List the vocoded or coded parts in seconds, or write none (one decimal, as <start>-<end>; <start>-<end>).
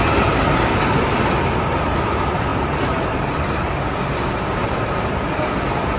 2.5-3.6; 4.6-5.2